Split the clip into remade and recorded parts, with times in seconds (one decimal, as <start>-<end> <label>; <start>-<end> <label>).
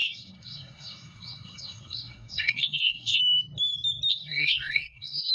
0.0-3.2 remade; 3.2-4.1 recorded; 4.1-5.3 remade